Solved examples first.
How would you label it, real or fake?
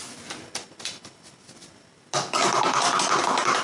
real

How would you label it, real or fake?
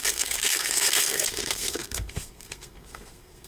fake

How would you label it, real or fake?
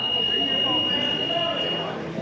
real